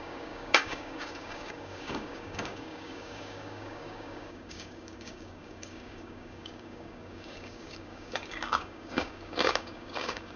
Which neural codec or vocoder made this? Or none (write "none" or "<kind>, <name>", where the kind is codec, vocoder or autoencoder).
codec, DAC